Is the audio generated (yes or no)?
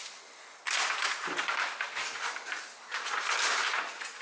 no